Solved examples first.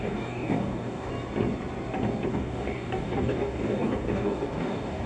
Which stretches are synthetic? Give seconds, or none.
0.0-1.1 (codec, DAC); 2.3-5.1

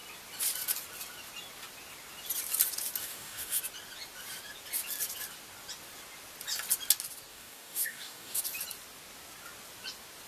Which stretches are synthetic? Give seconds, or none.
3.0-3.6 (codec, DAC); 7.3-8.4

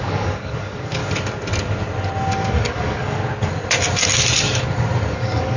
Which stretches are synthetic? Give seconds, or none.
0.0-1.0 (codec, DAC); 2.3-3.2; 5.1-5.6

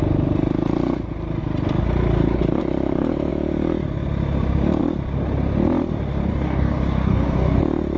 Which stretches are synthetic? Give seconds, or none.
6.3-7.6 (codec, DAC)

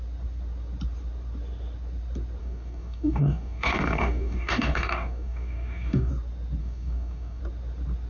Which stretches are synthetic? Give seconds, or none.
2.4-6.1 (codec, DAC); 6.6-7.4

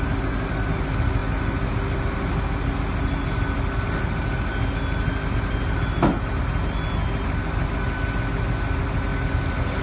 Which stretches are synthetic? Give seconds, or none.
none